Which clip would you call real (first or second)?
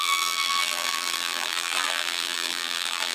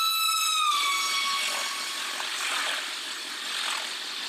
second